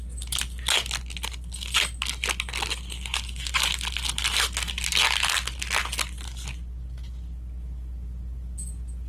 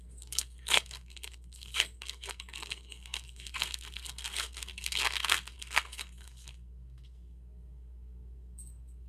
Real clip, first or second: first